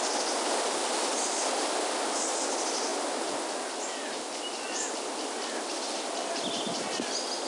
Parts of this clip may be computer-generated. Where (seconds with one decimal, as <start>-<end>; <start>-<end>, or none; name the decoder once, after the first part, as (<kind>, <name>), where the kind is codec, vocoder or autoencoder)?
none